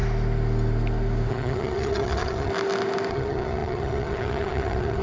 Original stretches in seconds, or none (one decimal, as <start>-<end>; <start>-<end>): 0.0-1.3; 2.5-3.1